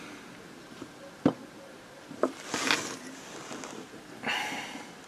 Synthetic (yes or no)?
no